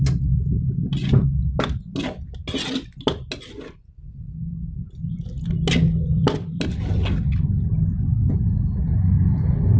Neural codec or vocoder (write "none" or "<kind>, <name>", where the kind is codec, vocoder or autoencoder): none